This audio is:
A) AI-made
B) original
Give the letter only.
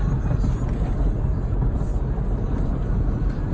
B